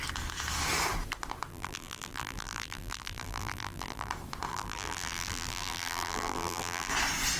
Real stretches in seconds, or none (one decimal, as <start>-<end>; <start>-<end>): 0.0-1.5; 4.1-4.5; 6.9-7.4